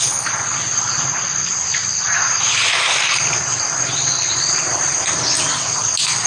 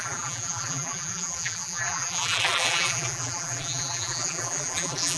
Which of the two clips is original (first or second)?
first